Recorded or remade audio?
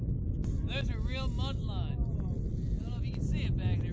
recorded